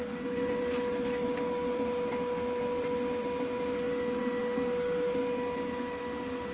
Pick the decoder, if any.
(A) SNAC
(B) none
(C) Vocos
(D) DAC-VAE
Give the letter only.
B